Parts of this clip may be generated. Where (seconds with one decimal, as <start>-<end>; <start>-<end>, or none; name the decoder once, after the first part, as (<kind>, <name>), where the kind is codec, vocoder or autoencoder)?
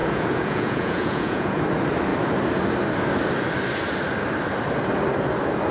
0.0-1.6 (vocoder, Vocos)